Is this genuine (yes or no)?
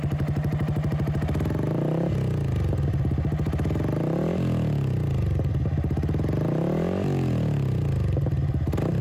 yes